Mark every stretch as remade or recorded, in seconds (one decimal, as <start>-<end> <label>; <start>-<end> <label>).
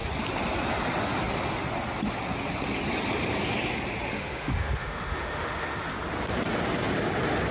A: 0.0-4.1 recorded; 4.1-5.8 remade; 5.8-7.5 recorded